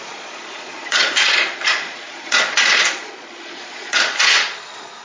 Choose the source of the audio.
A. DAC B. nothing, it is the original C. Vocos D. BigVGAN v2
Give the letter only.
C